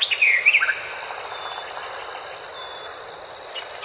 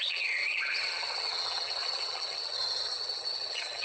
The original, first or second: first